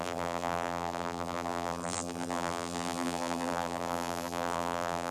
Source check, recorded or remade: remade